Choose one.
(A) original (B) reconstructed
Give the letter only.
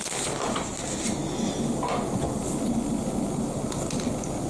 A